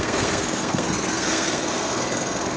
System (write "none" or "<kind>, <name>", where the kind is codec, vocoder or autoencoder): codec, SNAC